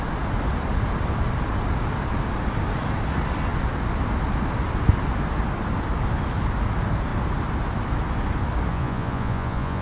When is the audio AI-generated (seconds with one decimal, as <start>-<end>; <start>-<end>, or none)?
8.7-9.8